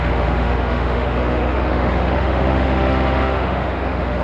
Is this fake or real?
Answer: fake